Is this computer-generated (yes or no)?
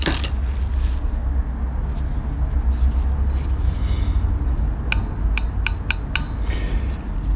no